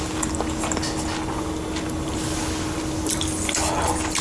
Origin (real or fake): real